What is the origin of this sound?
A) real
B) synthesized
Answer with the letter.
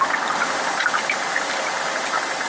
A